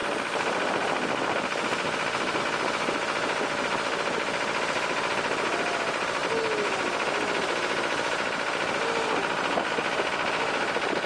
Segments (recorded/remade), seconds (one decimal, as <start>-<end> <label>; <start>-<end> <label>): 0.0-11.1 recorded